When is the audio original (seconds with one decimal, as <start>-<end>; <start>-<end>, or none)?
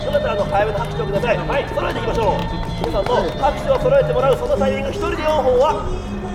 0.0-6.3